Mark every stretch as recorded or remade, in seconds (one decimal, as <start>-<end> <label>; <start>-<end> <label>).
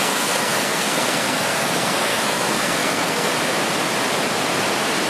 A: 0.0-3.3 remade; 3.3-5.1 recorded